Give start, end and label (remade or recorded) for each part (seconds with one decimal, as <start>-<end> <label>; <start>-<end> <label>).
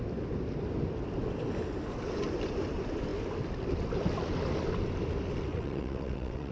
0.0-5.5 recorded; 5.5-6.5 remade